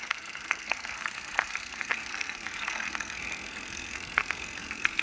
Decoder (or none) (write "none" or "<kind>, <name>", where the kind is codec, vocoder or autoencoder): codec, SNAC